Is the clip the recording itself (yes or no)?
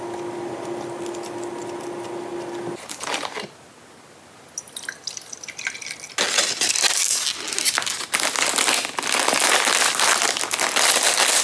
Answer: yes